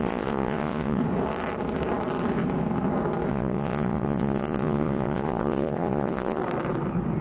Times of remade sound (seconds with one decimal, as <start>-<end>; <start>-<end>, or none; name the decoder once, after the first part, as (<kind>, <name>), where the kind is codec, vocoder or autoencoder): 0.0-1.0 (vocoder, Vocos); 3.3-6.4